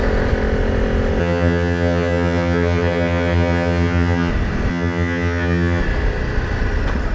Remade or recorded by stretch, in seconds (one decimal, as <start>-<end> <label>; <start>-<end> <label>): 0.0-1.2 recorded; 1.2-4.3 remade; 4.3-4.7 recorded; 4.7-5.8 remade; 5.8-7.1 recorded